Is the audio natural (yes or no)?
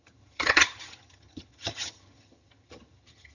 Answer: no